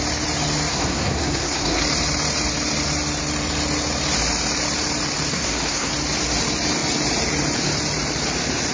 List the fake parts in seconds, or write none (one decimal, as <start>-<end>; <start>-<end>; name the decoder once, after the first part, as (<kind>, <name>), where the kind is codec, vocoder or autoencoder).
0.7-1.8 (codec, SNAC); 5.3-5.9